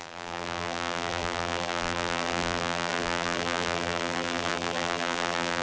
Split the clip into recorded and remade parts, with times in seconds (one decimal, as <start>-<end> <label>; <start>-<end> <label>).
0.0-5.6 remade